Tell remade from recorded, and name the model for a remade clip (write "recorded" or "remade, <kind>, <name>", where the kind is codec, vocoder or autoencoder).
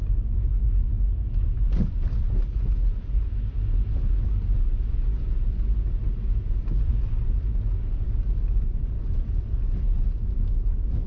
recorded